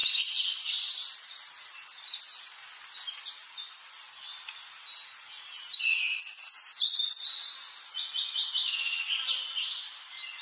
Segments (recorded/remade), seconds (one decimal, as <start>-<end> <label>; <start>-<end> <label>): 0.0-4.1 remade; 4.1-10.4 recorded